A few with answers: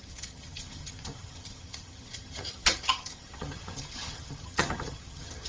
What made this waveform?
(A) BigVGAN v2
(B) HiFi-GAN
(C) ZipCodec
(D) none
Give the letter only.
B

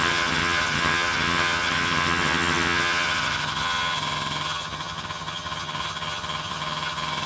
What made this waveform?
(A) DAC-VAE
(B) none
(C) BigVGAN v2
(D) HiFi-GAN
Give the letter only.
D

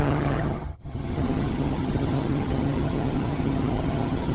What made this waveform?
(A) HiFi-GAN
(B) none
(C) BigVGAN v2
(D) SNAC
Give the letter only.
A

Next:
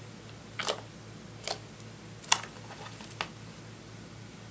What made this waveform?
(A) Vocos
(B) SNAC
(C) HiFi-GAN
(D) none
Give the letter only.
D